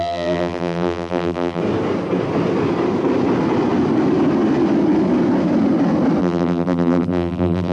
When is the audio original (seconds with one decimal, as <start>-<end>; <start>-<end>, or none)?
1.6-6.2